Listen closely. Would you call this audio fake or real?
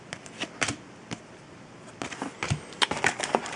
real